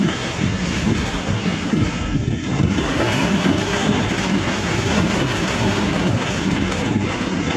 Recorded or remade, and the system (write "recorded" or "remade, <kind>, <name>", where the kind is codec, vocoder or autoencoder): remade, codec, SNAC